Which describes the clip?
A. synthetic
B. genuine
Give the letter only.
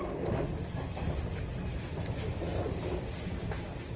B